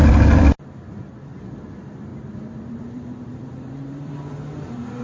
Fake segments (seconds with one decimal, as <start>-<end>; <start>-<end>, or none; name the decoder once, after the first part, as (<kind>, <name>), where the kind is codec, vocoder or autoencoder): 2.1-4.1 (vocoder, BigVGAN v2)